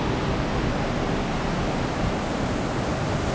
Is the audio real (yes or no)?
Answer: yes